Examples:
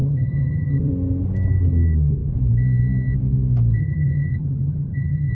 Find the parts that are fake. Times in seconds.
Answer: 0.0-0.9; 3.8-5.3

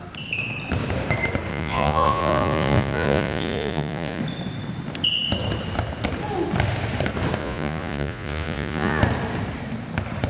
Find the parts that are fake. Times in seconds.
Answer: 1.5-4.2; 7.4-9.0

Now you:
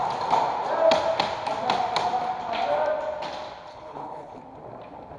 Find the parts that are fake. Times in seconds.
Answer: 3.7-4.4

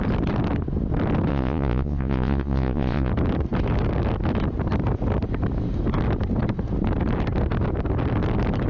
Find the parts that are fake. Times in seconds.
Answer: 1.3-3.1